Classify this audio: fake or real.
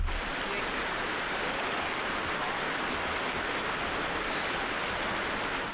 real